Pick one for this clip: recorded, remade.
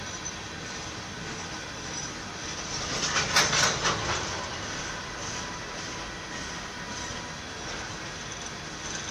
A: recorded